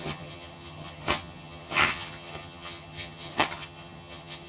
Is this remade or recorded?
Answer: remade